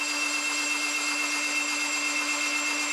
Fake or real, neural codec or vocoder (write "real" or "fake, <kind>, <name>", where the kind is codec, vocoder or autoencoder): real